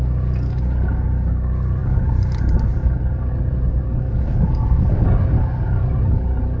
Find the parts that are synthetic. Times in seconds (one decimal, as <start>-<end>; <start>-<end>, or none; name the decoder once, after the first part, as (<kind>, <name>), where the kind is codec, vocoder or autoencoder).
none